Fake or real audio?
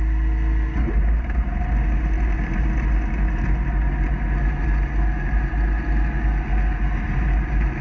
real